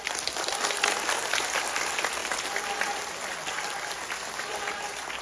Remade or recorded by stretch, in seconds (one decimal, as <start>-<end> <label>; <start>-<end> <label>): 0.0-5.2 recorded